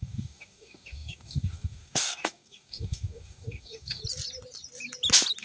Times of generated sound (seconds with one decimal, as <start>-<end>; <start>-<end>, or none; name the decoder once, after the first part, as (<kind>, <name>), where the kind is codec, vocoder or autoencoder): 0.0-4.0 (codec, DAC)